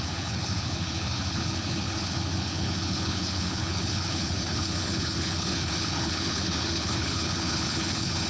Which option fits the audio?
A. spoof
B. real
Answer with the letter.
A